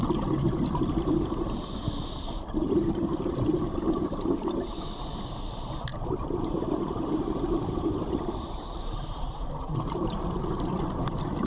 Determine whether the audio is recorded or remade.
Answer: remade